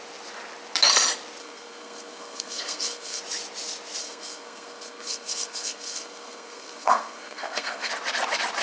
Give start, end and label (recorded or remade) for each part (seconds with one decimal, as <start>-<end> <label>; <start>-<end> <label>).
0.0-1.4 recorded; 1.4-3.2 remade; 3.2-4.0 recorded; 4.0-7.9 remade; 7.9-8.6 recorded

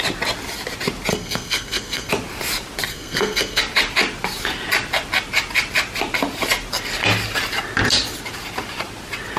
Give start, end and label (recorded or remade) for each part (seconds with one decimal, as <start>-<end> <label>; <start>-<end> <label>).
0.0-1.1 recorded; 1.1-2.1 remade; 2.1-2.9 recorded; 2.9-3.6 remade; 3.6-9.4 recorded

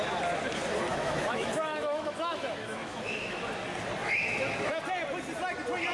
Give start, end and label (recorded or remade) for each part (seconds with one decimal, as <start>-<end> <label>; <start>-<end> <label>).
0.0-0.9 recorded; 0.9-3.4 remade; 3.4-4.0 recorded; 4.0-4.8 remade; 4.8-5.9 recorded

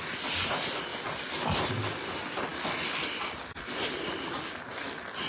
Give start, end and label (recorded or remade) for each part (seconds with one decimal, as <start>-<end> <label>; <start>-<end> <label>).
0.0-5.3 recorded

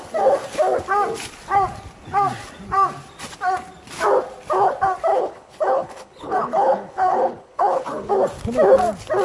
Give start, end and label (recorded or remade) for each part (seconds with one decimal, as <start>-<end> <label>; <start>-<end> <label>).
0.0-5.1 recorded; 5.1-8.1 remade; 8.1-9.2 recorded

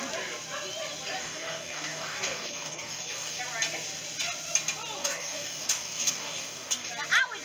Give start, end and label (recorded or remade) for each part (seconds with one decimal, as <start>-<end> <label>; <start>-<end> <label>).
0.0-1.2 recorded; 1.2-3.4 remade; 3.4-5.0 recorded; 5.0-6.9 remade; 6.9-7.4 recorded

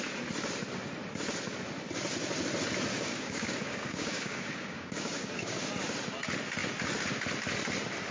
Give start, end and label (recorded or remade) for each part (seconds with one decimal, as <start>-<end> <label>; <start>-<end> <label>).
0.0-2.9 recorded; 2.9-5.7 remade; 5.7-8.1 recorded